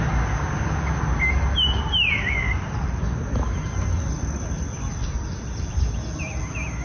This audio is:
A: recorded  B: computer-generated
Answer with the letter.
A